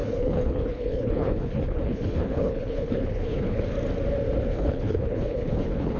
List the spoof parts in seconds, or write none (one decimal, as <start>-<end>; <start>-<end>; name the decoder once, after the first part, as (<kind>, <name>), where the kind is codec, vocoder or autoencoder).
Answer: 0.0-3.6 (codec, HILCodec); 4.5-6.0